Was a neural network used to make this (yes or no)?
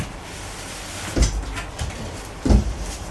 no